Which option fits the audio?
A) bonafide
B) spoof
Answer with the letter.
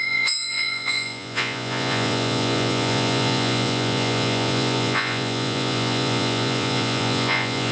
B